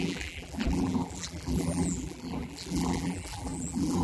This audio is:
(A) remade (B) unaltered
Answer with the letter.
A